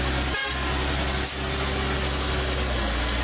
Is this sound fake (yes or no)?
no